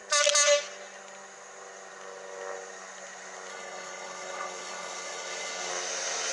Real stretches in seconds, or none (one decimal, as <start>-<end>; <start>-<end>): 0.0-3.5; 5.7-6.3